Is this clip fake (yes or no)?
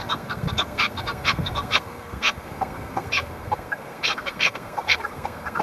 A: yes